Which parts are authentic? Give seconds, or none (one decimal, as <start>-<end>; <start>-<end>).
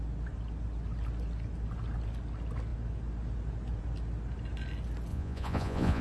0.0-5.1